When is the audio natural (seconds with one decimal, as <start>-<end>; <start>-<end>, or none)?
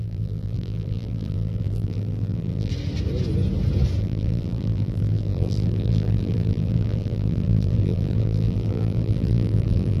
2.7-4.0